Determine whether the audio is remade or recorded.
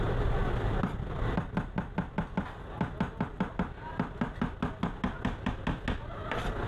recorded